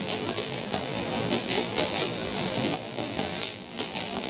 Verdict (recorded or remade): remade